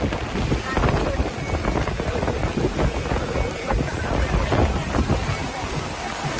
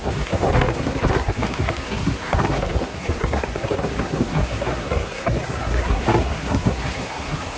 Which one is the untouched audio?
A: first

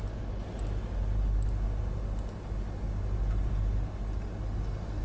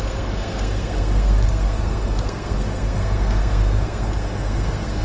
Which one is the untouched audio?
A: first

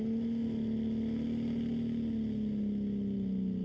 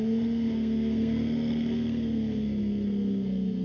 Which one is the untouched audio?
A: first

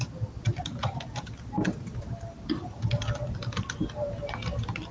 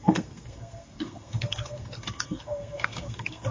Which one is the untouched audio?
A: first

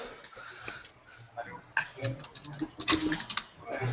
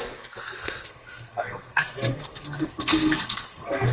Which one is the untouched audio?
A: first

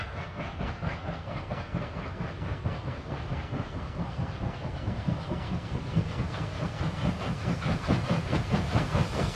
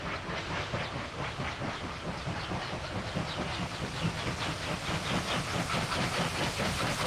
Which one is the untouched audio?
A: second